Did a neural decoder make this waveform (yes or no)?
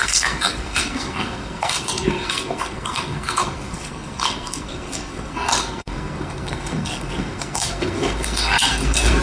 yes